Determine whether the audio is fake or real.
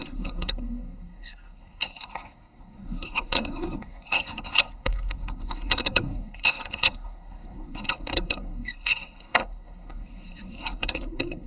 fake